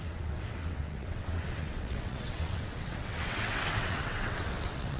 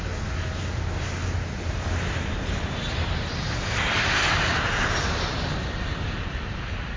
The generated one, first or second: first